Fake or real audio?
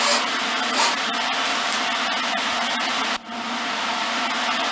real